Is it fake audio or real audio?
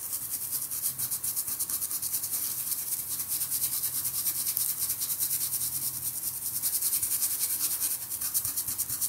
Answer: fake